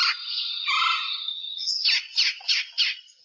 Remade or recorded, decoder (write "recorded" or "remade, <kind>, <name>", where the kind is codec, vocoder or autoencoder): recorded